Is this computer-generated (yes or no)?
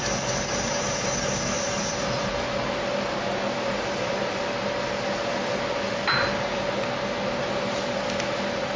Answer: no